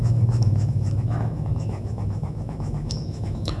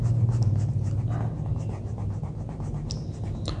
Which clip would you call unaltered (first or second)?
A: second